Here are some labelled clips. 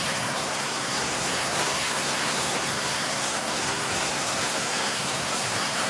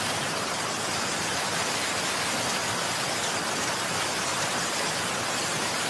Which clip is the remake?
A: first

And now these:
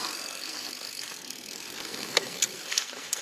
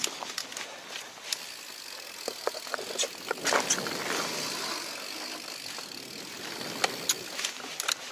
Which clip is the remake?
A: first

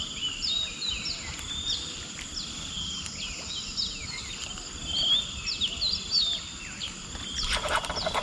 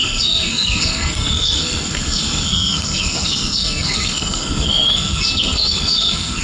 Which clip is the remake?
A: second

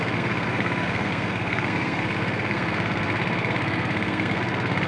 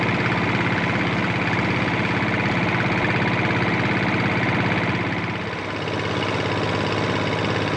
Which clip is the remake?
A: first